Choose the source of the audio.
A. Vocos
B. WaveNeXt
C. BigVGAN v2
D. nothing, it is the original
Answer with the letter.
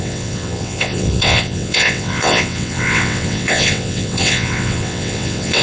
B